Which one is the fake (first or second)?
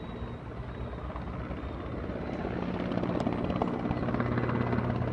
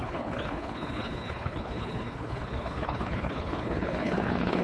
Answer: second